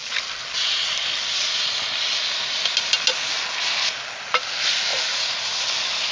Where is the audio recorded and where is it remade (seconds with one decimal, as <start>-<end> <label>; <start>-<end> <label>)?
0.0-4.9 recorded; 4.9-5.6 remade; 5.6-6.1 recorded